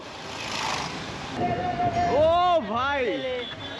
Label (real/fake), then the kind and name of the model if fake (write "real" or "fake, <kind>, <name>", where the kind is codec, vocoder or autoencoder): real